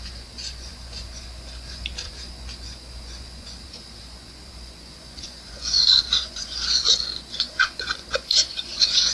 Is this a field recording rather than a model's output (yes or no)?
no